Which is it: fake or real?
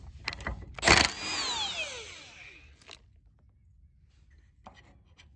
real